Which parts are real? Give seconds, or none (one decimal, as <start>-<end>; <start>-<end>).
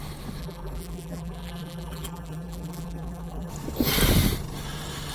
0.0-0.4; 3.5-5.1